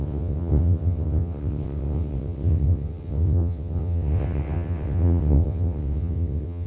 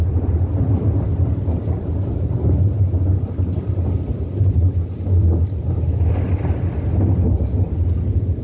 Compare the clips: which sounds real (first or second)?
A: second